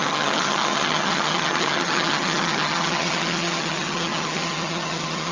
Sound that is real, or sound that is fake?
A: fake